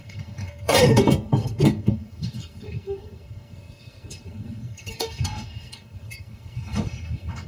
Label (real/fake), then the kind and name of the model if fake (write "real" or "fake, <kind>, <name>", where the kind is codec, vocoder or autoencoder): fake, codec, SNAC